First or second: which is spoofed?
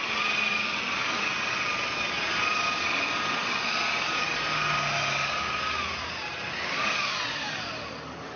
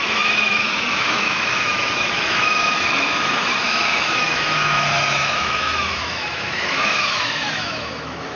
second